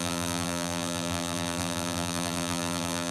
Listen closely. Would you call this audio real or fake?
fake